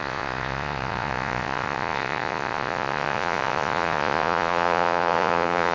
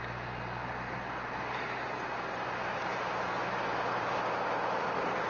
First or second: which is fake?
first